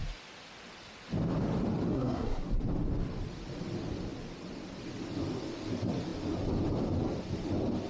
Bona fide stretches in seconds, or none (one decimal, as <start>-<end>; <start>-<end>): 0.0-1.9; 2.6-7.9